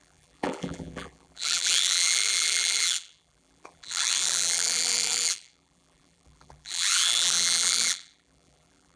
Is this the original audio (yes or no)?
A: no